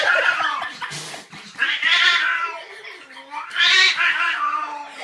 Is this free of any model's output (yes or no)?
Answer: yes